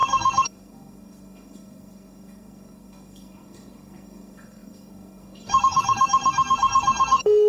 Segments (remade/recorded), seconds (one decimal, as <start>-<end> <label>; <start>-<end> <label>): 0.0-7.5 remade